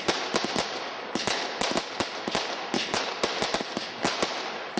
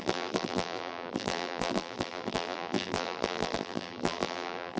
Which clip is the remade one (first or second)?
second